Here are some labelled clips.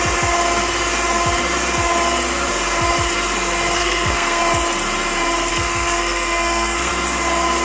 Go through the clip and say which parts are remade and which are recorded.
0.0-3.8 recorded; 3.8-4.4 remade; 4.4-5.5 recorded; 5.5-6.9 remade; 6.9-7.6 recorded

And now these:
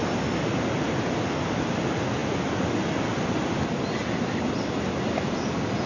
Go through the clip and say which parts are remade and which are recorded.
0.0-5.9 recorded

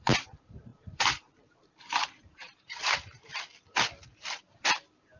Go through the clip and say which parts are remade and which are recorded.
0.0-3.5 remade; 3.5-4.4 recorded; 4.4-5.2 remade